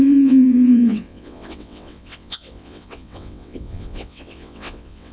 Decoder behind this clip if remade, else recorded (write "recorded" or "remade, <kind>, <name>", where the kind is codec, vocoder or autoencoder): remade, vocoder, WaveNeXt